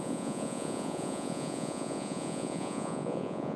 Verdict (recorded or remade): remade